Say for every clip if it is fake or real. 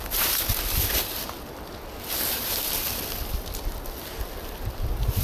real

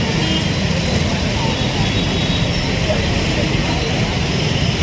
real